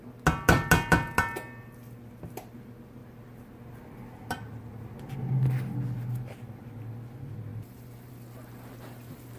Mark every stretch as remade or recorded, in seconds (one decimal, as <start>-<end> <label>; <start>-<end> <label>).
0.0-7.5 recorded; 7.5-8.1 remade; 8.1-9.4 recorded